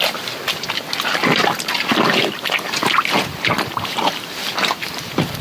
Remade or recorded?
recorded